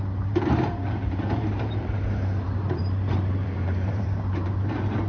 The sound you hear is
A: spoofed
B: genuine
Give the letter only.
A